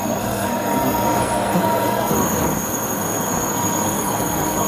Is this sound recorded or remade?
remade